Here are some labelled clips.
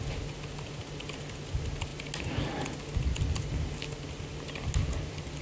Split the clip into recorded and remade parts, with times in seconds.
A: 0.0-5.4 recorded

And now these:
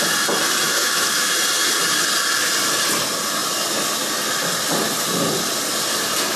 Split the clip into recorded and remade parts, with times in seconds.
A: 0.0-0.8 recorded; 0.8-1.3 remade; 1.3-6.4 recorded

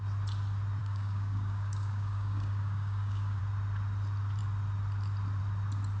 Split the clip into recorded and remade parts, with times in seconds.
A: 0.0-0.8 recorded; 0.8-3.4 remade; 3.4-6.0 recorded

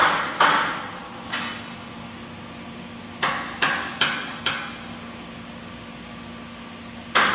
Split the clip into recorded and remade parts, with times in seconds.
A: 0.0-7.3 recorded

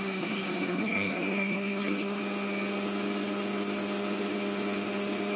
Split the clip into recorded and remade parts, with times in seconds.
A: 0.0-2.2 remade; 2.2-5.4 recorded

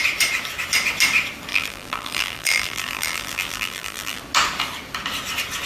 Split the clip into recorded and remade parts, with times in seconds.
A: 0.0-1.5 recorded; 1.5-4.2 remade; 4.2-5.7 recorded

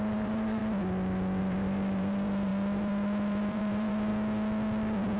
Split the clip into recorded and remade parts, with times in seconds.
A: 0.0-0.6 remade; 0.6-1.4 recorded; 1.4-4.1 remade; 4.1-5.2 recorded